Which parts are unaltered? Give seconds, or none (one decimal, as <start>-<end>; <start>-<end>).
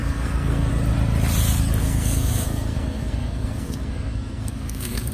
0.7-1.8